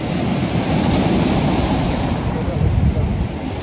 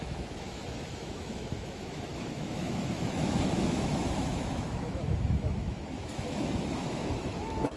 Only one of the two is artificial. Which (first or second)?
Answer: second